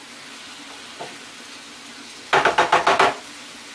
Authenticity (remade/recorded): recorded